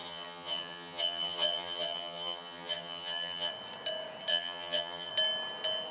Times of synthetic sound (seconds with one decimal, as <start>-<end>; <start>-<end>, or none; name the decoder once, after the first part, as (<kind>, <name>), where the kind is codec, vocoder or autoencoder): 0.0-3.5 (vocoder, HiFi-GAN); 4.3-5.1